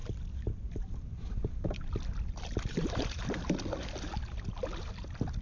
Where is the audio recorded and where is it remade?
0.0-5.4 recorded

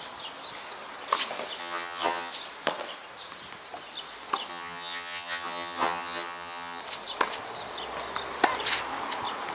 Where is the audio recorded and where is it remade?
0.0-1.6 recorded; 1.6-2.3 remade; 2.3-4.5 recorded; 4.5-6.8 remade; 6.8-9.5 recorded

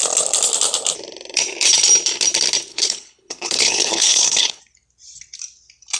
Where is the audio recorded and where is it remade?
0.0-2.7 recorded; 2.7-4.6 remade; 4.6-6.0 recorded